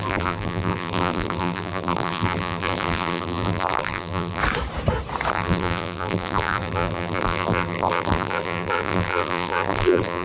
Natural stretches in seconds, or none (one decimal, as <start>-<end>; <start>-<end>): 4.4-5.3